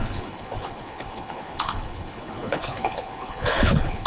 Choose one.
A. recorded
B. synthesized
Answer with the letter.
B